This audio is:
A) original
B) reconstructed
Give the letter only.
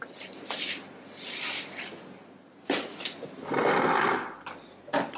A